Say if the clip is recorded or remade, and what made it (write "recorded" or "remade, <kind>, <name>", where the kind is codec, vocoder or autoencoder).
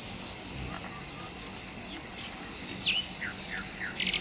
recorded